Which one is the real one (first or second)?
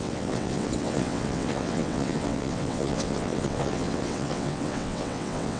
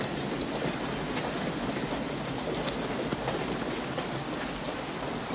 second